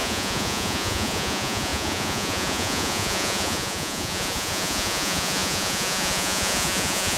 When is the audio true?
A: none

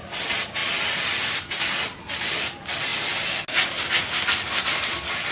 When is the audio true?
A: 0.0-5.3

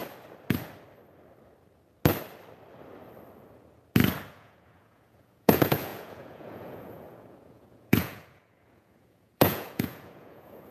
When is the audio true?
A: 0.0-4.3

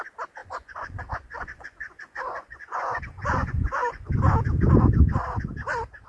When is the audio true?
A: 0.0-0.4; 4.1-6.1